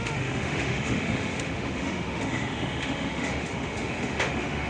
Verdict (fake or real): fake